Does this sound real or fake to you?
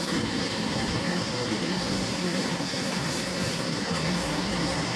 fake